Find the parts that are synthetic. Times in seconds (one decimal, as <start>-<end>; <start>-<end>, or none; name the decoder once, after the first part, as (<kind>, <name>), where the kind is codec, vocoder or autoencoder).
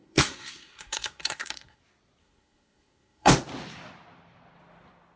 0.0-1.8 (codec, SNAC); 2.2-3.3